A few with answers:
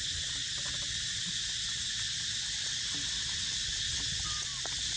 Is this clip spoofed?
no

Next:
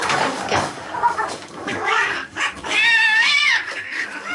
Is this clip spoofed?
yes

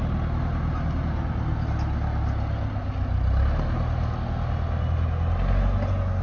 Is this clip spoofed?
no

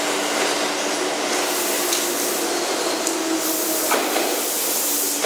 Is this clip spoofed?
no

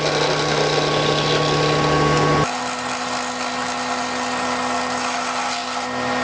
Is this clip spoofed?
no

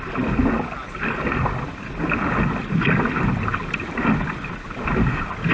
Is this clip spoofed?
no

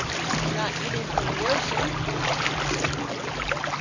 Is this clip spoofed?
no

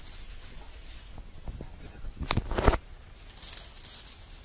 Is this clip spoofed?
no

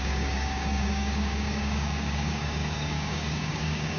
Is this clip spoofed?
yes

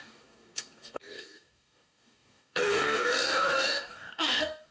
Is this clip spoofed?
yes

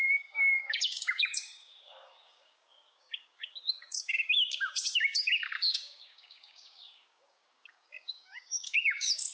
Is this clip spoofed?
yes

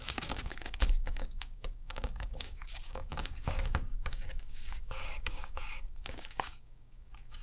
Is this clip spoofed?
yes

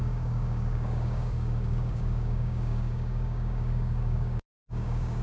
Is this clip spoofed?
yes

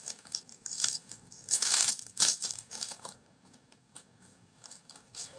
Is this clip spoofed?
yes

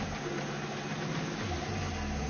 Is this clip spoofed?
no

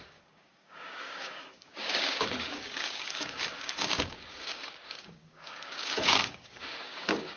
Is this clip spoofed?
yes